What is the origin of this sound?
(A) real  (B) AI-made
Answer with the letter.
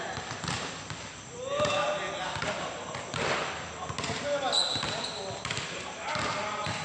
A